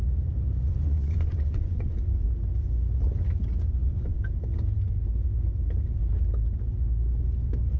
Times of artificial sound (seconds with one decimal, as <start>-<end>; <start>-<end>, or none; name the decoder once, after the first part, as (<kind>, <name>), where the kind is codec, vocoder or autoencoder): 0.8-2.3 (vocoder, Vocos)